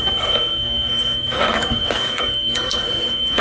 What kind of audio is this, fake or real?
fake